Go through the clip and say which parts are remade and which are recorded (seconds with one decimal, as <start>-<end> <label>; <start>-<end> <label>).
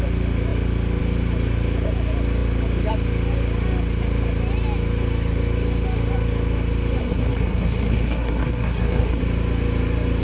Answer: 0.0-7.0 recorded; 7.0-9.2 remade; 9.2-10.2 recorded